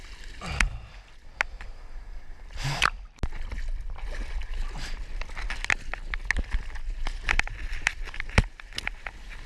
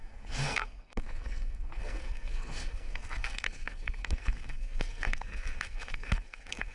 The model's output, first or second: second